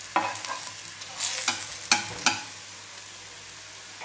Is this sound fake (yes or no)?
no